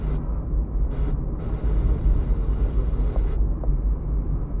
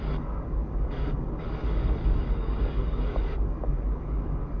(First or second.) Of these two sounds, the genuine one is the first